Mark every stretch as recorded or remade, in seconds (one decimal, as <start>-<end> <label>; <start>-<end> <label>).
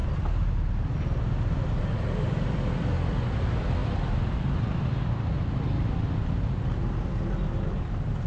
0.0-8.3 recorded